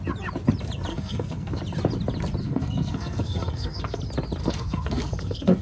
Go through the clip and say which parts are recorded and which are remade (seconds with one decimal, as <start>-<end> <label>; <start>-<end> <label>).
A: 0.0-0.9 recorded; 0.9-1.6 remade; 1.6-2.4 recorded; 2.4-4.0 remade; 4.0-4.4 recorded; 4.4-5.6 remade